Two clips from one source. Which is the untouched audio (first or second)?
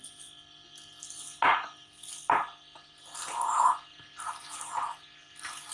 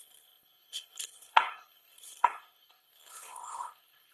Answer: first